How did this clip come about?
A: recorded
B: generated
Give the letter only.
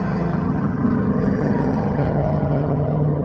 B